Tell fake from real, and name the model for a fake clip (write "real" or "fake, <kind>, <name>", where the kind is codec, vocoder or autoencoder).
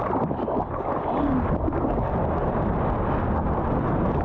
real